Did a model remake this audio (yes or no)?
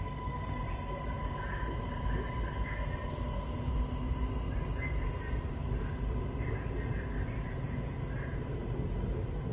no